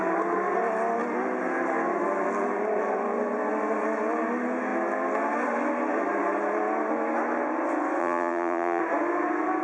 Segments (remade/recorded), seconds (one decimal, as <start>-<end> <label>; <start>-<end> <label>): 0.0-8.0 recorded; 8.0-8.8 remade; 8.8-9.6 recorded